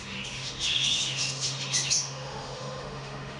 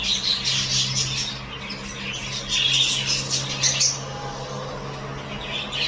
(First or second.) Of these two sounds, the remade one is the first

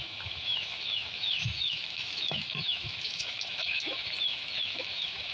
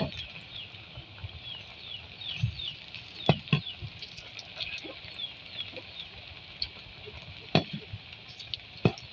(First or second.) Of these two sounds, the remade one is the first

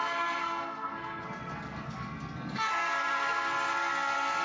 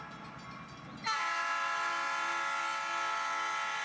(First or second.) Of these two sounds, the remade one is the first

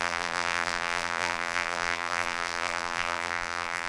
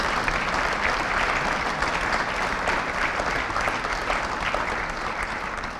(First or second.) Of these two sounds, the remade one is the first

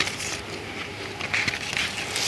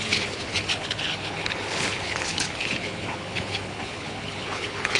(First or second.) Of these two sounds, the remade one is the second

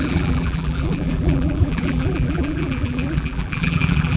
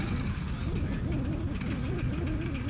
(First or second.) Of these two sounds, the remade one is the first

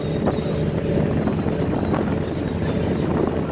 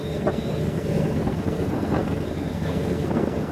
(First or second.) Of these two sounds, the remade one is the second